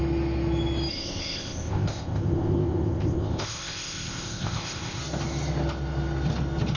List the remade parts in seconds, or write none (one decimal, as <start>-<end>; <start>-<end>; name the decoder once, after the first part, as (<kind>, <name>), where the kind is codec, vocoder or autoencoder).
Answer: 0.9-5.0 (codec, ZipCodec)